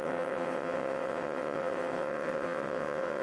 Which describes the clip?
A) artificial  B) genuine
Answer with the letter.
A